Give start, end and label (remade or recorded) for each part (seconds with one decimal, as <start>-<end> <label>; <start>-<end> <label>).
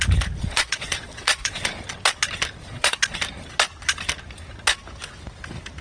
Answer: 0.0-0.4 recorded; 0.4-1.8 remade; 1.8-2.6 recorded; 2.6-3.2 remade; 3.2-5.8 recorded